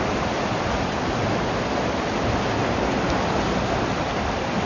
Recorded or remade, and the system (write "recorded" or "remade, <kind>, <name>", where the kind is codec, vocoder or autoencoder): recorded